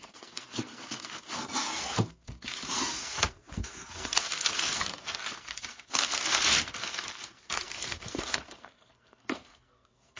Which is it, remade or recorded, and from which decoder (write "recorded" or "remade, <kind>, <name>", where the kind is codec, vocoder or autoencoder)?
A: remade, codec, SNAC